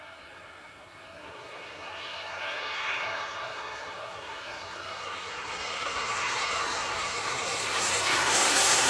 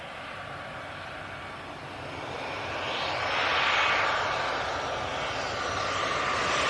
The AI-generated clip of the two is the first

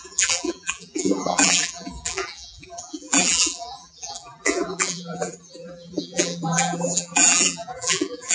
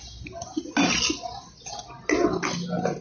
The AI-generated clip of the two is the first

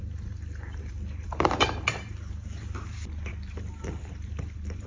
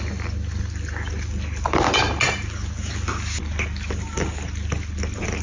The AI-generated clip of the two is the first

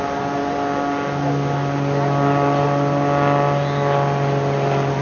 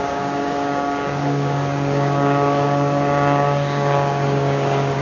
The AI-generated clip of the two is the second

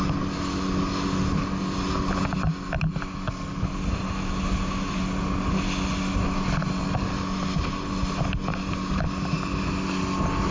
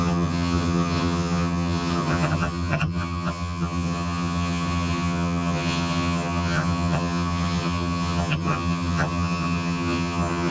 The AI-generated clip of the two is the second